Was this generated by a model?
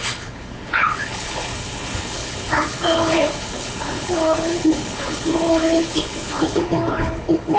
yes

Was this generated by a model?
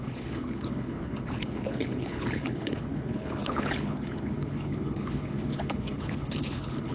yes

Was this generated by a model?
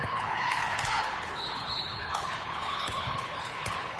yes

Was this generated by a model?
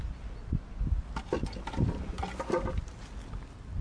no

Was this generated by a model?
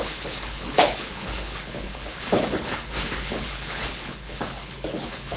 yes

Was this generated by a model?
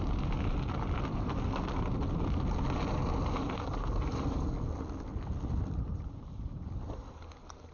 no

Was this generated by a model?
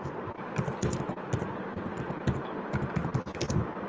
no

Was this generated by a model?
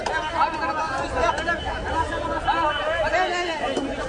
no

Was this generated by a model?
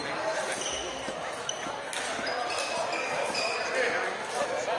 no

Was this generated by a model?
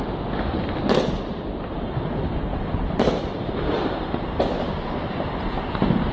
no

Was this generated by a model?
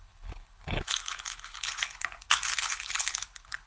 yes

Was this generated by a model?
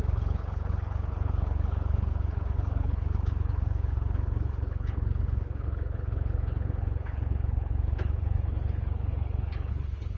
yes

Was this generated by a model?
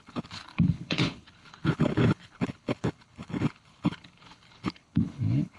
yes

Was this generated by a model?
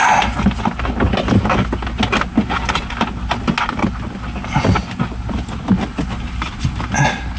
no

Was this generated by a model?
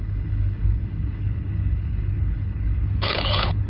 yes